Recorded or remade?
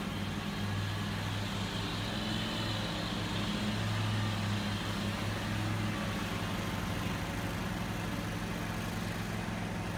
recorded